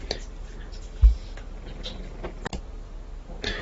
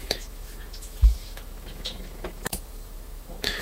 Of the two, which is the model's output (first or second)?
second